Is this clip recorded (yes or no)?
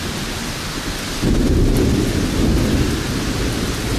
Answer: yes